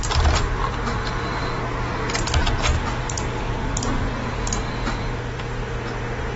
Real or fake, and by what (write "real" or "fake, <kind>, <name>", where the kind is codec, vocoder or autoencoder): real